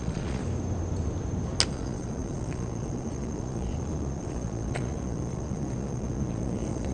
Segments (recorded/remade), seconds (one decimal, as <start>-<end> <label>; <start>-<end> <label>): 0.0-0.4 remade; 0.4-1.7 recorded; 1.7-6.9 remade